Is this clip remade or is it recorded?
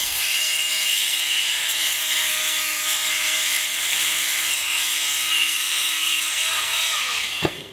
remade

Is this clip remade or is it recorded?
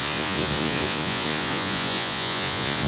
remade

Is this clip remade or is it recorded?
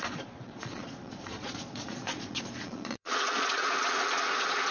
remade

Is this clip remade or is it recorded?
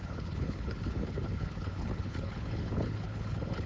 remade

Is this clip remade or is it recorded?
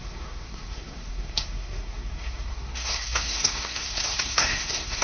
remade